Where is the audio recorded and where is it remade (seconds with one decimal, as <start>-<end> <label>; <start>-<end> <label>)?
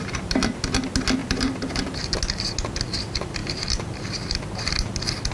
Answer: 0.0-1.2 recorded; 1.2-1.8 remade; 1.8-3.4 recorded; 3.4-4.7 remade; 4.7-5.3 recorded